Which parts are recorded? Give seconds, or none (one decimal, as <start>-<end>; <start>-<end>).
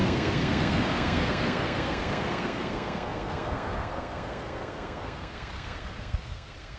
none